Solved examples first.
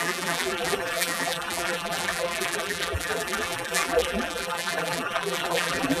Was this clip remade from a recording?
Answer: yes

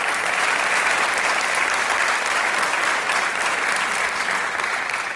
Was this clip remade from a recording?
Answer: no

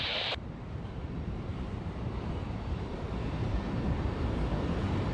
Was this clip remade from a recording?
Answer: yes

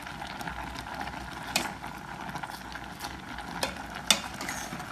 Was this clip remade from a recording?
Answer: no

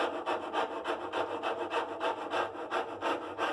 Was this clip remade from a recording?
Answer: no